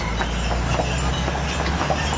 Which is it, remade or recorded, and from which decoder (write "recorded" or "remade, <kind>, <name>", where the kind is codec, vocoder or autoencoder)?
recorded